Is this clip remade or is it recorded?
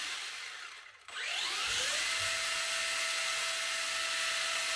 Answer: recorded